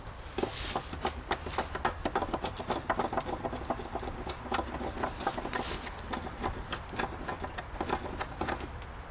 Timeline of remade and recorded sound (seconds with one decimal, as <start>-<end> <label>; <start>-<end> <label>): 0.0-9.1 recorded

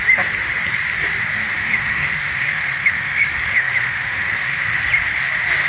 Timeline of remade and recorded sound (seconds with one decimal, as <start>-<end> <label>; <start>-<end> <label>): 0.0-1.4 recorded; 1.4-4.8 remade; 4.8-5.7 recorded

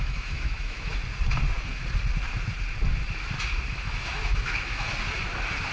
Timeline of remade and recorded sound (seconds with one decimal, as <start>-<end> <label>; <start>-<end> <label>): 0.0-0.9 remade; 0.9-3.7 recorded; 3.7-4.9 remade; 4.9-5.7 recorded

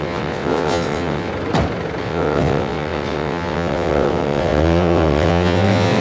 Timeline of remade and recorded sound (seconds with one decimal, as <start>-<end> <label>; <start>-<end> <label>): 0.0-1.3 remade; 1.3-2.0 recorded; 2.0-6.0 remade

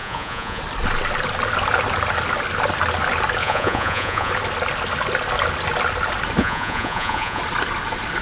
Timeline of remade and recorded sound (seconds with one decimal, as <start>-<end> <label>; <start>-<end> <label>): 0.0-0.6 remade; 0.6-3.4 recorded; 3.4-4.3 remade; 4.3-6.4 recorded; 6.4-7.4 remade; 7.4-8.2 recorded

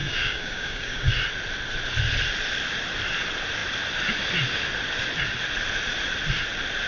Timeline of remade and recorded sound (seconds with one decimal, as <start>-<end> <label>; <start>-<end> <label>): 0.0-1.1 remade; 1.1-6.9 recorded

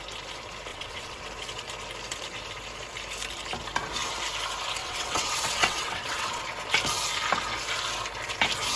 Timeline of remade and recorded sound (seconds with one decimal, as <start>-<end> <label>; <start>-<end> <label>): 0.0-0.7 recorded; 0.7-1.2 remade; 1.2-4.8 recorded; 4.8-6.4 remade; 6.4-8.8 recorded